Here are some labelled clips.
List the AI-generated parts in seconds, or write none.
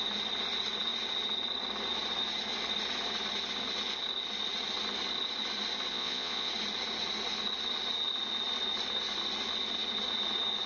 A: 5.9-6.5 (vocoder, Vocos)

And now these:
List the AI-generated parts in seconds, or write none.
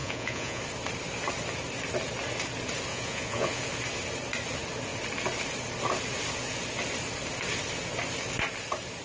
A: 0.0-0.6 (vocoder, Vocos); 2.9-3.6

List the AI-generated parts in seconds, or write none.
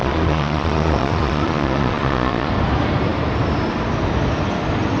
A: 0.0-2.5 (vocoder, Vocos)